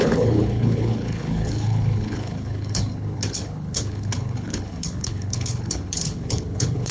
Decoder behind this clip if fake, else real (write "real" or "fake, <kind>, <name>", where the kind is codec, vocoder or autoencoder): fake, codec, HILCodec